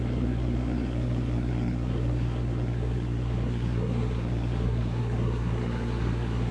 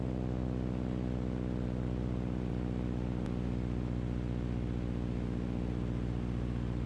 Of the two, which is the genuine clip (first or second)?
second